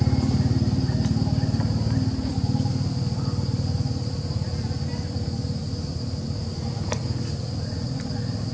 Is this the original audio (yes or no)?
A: yes